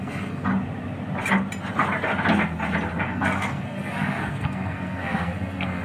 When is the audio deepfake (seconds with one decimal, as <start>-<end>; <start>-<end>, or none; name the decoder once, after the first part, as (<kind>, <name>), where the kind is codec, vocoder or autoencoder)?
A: 0.0-0.5 (codec, SNAC); 3.0-5.8